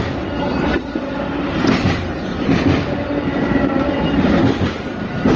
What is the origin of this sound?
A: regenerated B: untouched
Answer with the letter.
B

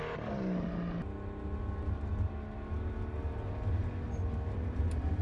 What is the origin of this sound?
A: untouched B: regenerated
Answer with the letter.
A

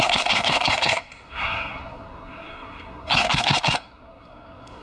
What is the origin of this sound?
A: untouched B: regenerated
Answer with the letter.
B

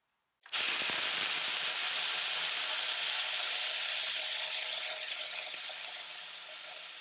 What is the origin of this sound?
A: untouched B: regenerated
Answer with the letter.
A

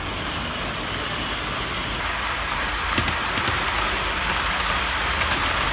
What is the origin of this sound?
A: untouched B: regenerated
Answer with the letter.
A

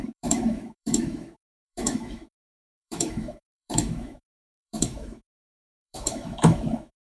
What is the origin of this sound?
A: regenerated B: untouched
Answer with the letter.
A